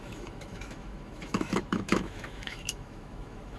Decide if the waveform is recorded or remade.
remade